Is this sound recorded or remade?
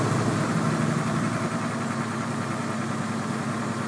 recorded